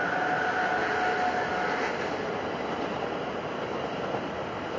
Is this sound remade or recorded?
recorded